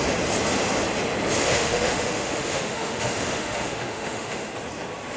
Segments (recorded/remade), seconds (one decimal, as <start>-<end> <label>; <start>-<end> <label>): 0.0-1.4 recorded; 1.4-4.5 remade; 4.5-5.2 recorded